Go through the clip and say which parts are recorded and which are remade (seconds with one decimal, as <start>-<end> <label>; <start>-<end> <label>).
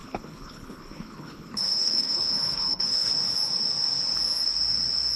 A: 0.0-3.1 remade; 3.1-5.2 recorded